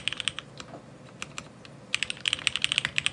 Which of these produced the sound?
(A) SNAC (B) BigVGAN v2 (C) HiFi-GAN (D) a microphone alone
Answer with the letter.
D